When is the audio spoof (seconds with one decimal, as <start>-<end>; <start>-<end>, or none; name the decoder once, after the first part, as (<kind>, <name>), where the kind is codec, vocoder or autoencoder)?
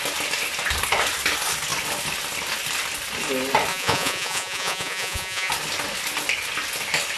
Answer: 3.7-5.5 (vocoder, Vocos)